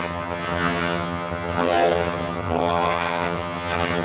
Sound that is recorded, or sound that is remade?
remade